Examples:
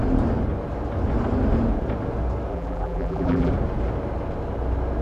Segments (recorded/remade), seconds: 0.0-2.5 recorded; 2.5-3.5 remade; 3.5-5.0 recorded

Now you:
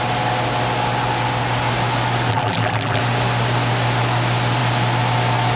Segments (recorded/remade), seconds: 0.0-2.3 recorded; 2.3-3.0 remade; 3.0-5.6 recorded

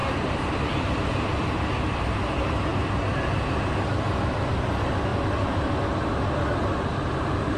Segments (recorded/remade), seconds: 0.0-0.8 remade; 0.8-5.1 recorded; 5.1-5.8 remade; 5.8-7.6 recorded

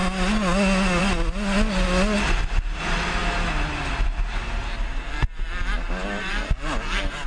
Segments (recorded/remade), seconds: 0.0-7.3 recorded

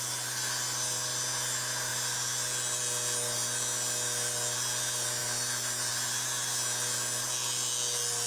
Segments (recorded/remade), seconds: 0.0-8.3 recorded

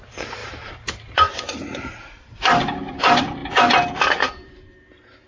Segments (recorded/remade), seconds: 0.0-3.4 remade; 3.4-4.0 recorded; 4.0-5.3 remade

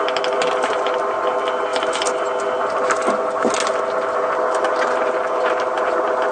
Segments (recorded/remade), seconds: 0.0-6.3 recorded